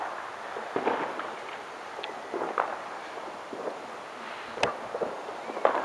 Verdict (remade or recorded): recorded